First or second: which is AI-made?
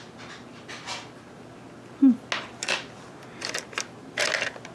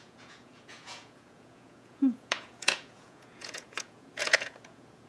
second